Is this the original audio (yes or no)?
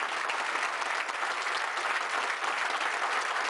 yes